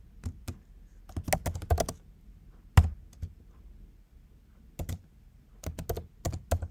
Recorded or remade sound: recorded